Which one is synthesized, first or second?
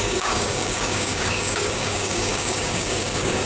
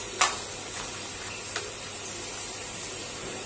first